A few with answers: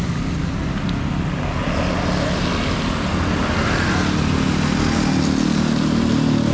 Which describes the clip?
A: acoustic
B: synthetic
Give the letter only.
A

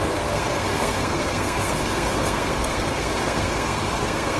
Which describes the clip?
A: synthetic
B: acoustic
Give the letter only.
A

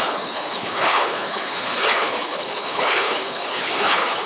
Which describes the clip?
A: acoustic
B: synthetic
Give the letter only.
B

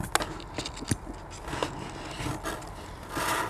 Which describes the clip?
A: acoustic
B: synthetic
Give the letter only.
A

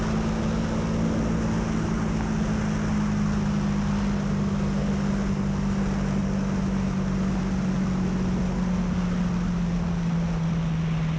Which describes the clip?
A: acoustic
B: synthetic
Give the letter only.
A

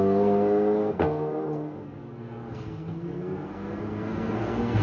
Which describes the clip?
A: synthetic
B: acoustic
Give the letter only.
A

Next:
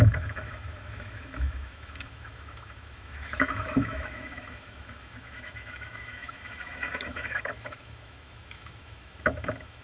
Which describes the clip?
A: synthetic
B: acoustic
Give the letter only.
A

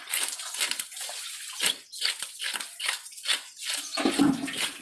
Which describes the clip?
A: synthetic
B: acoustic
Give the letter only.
B